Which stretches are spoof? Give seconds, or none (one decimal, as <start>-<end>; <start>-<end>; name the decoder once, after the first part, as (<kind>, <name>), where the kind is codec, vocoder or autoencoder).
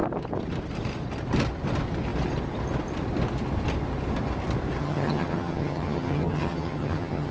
4.8-7.3 (vocoder, HiFi-GAN)